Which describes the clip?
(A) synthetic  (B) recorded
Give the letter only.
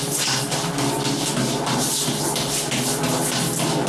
B